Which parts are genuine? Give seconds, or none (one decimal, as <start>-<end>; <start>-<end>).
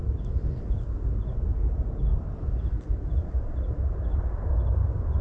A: 0.0-5.2